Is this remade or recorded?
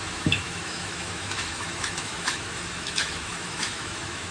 remade